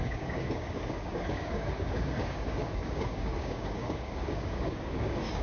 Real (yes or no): no